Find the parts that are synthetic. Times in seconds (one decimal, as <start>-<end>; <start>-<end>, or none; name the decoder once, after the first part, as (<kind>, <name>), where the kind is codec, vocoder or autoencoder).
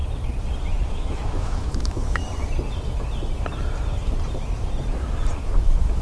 0.9-2.2 (autoencoder, DAC-VAE); 5.6-6.0